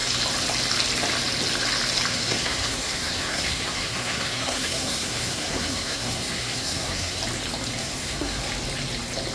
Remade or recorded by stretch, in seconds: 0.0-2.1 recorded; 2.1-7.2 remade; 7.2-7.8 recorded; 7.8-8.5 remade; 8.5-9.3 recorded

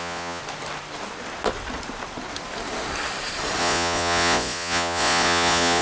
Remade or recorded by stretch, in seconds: 0.0-0.4 remade; 0.4-3.6 recorded; 3.6-5.8 remade

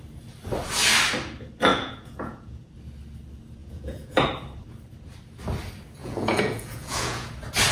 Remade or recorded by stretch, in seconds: 0.0-1.7 recorded; 1.7-2.7 remade; 2.7-3.6 recorded; 3.6-4.3 remade; 4.3-6.0 recorded; 6.0-7.3 remade; 7.3-7.7 recorded

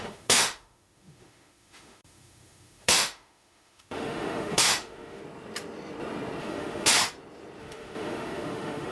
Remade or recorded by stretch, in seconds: 0.0-5.2 remade; 5.2-6.4 recorded; 6.4-6.9 remade; 6.9-7.6 recorded; 7.6-8.9 remade

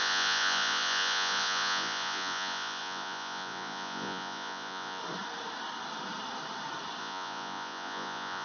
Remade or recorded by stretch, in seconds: 0.0-5.0 remade; 5.0-7.0 recorded; 7.0-8.4 remade